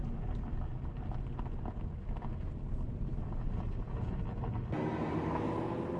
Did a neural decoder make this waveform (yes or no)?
no